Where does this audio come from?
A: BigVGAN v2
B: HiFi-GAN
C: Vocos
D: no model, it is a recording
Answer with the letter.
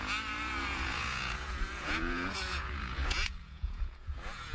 C